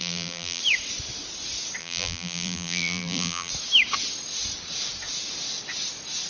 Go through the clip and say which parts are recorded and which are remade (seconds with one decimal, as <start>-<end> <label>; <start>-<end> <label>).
0.0-0.6 remade; 0.6-1.8 recorded; 1.8-3.5 remade; 3.5-6.3 recorded